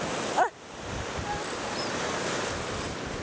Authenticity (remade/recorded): recorded